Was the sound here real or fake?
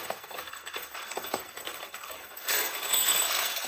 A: fake